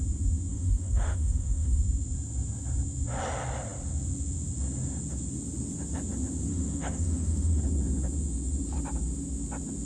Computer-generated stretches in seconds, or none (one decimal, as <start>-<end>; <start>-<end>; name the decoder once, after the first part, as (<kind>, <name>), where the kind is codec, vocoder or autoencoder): 0.5-1.8 (autoencoder, DAC-VAE); 6.5-7.6